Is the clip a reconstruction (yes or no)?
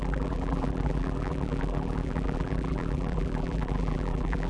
yes